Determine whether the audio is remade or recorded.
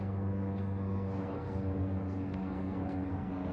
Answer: remade